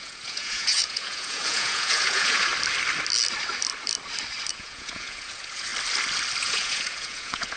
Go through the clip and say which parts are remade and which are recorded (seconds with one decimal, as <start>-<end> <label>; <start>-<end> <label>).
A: 0.0-2.5 remade; 2.5-4.5 recorded; 4.5-5.7 remade; 5.7-6.4 recorded; 6.4-7.6 remade